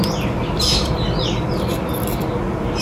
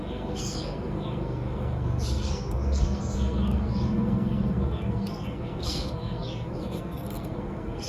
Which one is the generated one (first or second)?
second